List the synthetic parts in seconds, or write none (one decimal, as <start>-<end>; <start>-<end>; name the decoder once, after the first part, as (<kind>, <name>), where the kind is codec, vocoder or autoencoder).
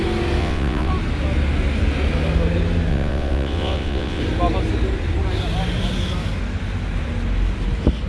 0.4-0.9 (vocoder, WaveNeXt); 2.9-4.2